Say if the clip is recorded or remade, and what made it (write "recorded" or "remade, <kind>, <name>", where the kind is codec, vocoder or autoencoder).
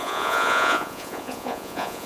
remade, vocoder, Vocos